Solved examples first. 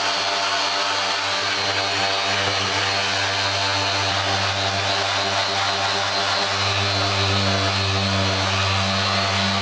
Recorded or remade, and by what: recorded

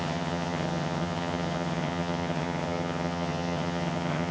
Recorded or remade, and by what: remade, vocoder, HiFi-GAN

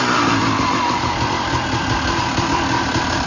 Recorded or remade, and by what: recorded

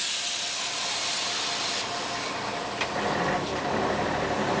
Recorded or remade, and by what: recorded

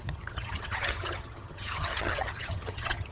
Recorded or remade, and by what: remade, vocoder, HiFi-GAN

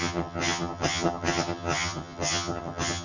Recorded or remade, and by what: remade, vocoder, HiFi-GAN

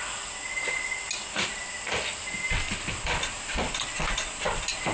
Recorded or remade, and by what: recorded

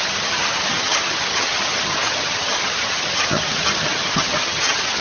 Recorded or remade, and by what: remade, vocoder, HiFi-GAN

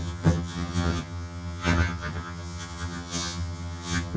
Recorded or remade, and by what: remade, vocoder, HiFi-GAN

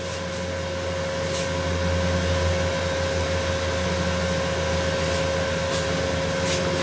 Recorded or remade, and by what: recorded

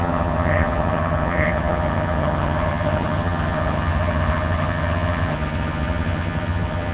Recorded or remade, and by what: remade, vocoder, HiFi-GAN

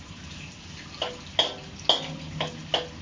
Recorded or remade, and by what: recorded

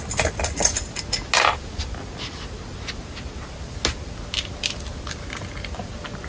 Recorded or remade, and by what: recorded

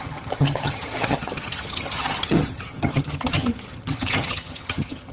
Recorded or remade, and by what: remade, vocoder, HiFi-GAN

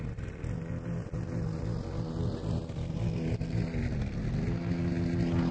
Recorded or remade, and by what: recorded